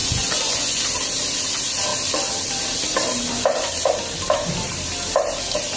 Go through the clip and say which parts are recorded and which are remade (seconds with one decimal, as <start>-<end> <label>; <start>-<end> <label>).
0.0-0.8 remade; 0.8-5.8 recorded